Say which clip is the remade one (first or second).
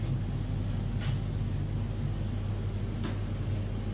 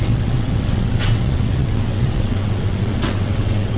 second